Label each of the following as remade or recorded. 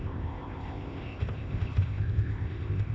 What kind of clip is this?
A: remade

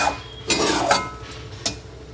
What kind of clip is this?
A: recorded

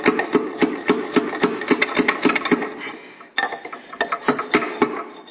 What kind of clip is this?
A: recorded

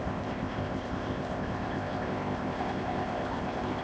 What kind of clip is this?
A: remade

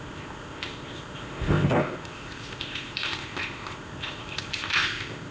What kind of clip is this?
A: remade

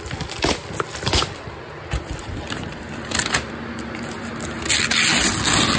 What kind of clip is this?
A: recorded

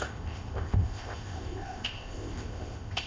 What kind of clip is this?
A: remade